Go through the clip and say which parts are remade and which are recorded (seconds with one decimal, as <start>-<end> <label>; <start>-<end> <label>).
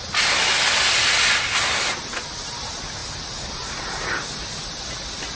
0.0-5.4 recorded